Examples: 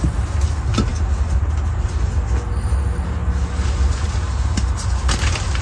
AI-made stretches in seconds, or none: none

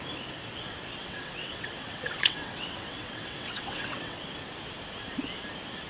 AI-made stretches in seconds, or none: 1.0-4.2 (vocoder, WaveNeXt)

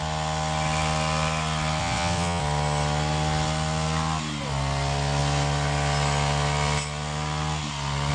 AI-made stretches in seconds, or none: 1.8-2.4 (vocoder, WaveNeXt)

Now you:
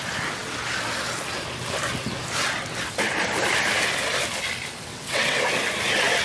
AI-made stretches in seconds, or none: 4.9-5.4 (vocoder, WaveNeXt)

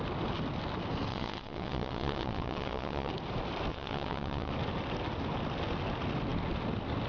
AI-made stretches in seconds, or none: 1.1-3.1 (vocoder, WaveNeXt); 3.7-4.5

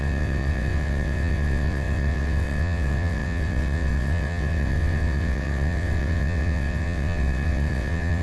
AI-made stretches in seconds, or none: 0.0-8.2 (vocoder, WaveNeXt)

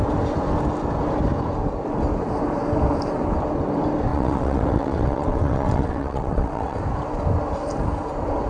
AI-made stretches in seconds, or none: 4.1-6.8 (vocoder, WaveNeXt)

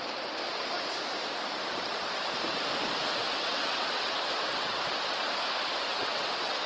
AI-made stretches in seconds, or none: 3.2-4.8 (vocoder, WaveNeXt); 5.9-6.7